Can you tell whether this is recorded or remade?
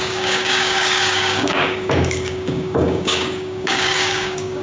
remade